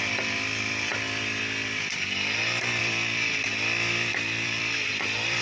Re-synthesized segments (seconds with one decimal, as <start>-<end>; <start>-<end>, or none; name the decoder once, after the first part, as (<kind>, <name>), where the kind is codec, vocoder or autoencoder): 0.0-0.9 (vocoder, BigVGAN v2); 2.8-3.5; 4.1-5.4